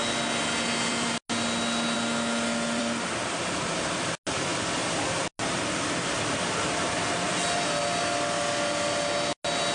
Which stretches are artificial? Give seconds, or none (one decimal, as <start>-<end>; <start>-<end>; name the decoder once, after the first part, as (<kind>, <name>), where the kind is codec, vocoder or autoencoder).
none